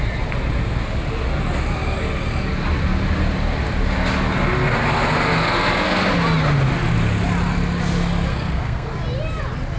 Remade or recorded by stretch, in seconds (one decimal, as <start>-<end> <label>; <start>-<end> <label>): 0.0-8.3 recorded; 8.3-8.9 remade; 8.9-9.8 recorded